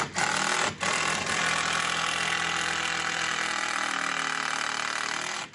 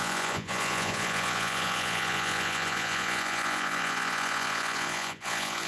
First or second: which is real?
first